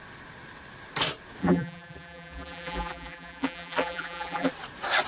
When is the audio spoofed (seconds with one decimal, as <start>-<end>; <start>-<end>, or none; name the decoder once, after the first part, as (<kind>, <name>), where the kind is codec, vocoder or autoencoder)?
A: 1.4-4.5 (vocoder, BigVGAN v2)

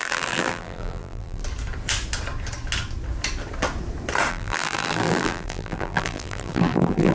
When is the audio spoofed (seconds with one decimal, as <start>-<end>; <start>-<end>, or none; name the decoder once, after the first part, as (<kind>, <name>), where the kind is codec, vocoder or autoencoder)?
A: 0.0-1.4 (vocoder, BigVGAN v2); 4.3-7.1

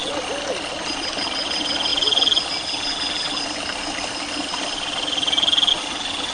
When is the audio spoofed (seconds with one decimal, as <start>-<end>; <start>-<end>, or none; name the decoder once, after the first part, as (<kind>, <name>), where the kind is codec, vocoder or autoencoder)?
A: none

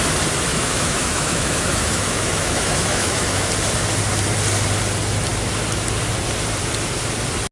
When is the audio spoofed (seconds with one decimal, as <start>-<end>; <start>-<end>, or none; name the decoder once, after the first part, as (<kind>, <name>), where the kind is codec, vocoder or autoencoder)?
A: 0.5-3.5 (autoencoder, DAC-VAE)

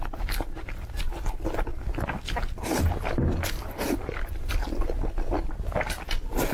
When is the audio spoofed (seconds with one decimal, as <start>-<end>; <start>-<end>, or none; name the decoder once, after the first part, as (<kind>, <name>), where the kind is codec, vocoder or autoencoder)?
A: none